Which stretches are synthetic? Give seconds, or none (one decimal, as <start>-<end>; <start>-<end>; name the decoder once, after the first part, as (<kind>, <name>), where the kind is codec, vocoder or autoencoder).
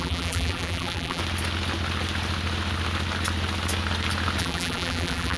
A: 0.0-1.2 (vocoder, BigVGAN v2); 4.4-5.4